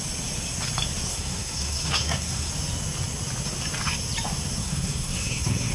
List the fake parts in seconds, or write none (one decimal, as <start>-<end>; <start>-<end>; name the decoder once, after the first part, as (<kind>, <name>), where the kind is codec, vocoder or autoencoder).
1.1-2.5 (codec, SNAC); 4.6-5.7